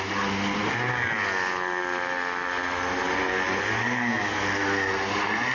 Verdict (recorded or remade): recorded